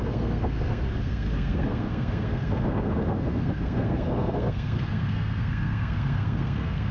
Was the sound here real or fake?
fake